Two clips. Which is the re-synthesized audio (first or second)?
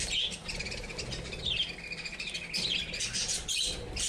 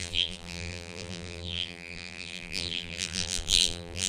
second